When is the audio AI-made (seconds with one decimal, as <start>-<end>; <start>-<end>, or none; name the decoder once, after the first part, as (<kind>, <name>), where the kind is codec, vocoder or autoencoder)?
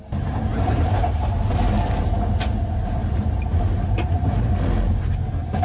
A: 0.5-1.5 (vocoder, BigVGAN v2); 3.0-4.5